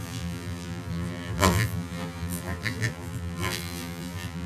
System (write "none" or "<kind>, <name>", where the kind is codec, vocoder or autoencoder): vocoder, BigVGAN v2